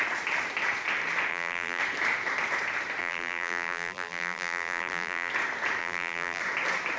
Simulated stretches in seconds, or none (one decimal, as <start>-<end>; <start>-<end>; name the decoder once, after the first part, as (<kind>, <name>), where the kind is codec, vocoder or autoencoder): 1.3-1.8 (vocoder, BigVGAN v2); 3.0-5.3; 5.8-6.4